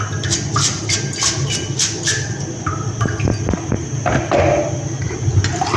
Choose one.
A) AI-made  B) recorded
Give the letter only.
B